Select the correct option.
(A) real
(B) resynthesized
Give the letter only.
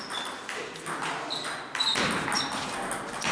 A